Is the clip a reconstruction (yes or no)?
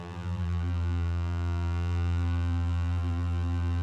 yes